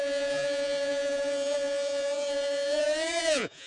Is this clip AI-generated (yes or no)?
yes